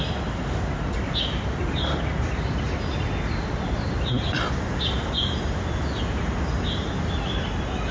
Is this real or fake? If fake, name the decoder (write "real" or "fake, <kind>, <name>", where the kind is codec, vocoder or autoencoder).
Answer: real